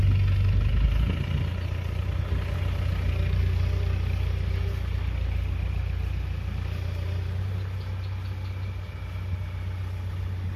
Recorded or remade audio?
recorded